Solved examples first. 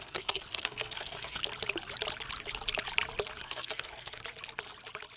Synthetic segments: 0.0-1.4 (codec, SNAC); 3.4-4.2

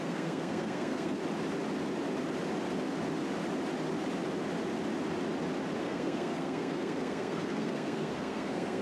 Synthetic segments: 0.0-1.2 (codec, SNAC); 5.8-8.8

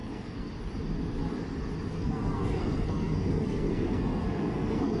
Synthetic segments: 0.0-0.5 (codec, SNAC); 1.9-5.0